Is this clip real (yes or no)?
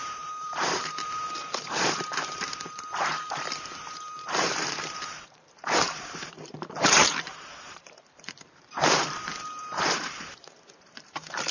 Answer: no